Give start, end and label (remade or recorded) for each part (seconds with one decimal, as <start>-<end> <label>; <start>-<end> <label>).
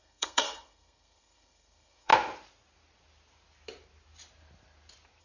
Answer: 0.0-2.1 remade; 2.1-5.2 recorded